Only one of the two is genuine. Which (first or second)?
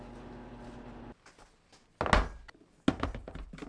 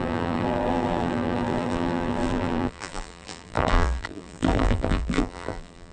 first